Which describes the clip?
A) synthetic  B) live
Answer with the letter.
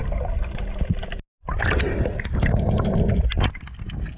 B